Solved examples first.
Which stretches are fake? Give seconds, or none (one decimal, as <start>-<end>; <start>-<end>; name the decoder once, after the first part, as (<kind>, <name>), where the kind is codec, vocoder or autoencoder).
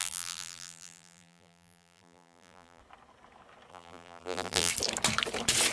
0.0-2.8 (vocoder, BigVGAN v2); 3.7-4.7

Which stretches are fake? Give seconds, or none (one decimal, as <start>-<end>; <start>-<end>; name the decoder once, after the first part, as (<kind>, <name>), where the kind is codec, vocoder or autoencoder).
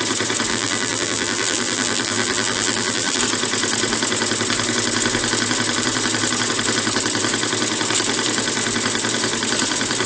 0.5-3.2 (vocoder, BigVGAN v2)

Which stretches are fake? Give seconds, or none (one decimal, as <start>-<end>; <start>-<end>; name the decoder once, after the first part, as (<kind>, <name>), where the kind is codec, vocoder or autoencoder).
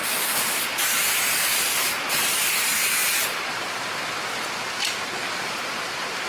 0.0-1.1 (vocoder, BigVGAN v2); 3.0-3.6